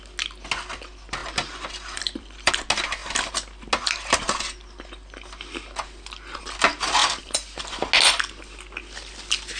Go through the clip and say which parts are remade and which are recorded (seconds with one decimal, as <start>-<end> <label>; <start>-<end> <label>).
0.0-1.2 recorded; 1.2-2.5 remade; 2.5-7.0 recorded; 7.0-7.6 remade; 7.6-9.6 recorded